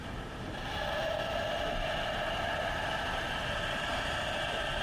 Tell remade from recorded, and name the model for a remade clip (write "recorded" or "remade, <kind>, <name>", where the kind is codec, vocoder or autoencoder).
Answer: recorded